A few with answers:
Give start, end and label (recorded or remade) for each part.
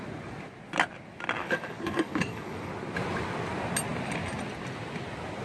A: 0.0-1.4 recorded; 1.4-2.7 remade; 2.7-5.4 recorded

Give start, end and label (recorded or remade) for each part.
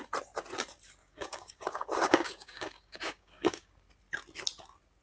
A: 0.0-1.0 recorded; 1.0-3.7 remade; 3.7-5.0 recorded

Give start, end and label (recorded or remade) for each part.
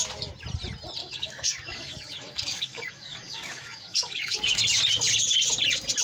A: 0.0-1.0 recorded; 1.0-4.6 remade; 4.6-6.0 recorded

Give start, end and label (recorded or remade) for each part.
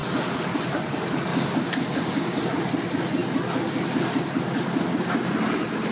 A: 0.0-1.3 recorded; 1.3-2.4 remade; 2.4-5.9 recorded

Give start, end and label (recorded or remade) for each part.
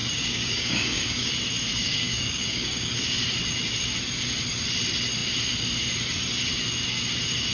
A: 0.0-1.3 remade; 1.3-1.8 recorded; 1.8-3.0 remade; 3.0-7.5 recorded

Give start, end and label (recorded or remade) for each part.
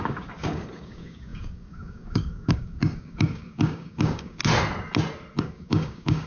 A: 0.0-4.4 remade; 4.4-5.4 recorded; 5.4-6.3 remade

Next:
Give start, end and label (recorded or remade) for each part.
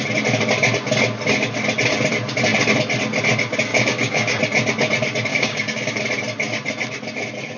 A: 0.0-3.7 recorded; 3.7-4.4 remade; 4.4-5.3 recorded; 5.3-6.0 remade; 6.0-7.6 recorded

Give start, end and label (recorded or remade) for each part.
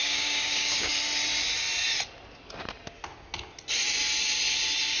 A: 0.0-0.9 remade; 0.9-5.0 recorded